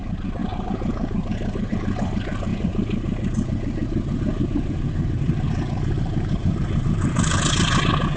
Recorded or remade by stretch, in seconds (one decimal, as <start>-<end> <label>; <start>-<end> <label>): 0.0-2.5 recorded; 2.5-7.4 remade; 7.4-8.2 recorded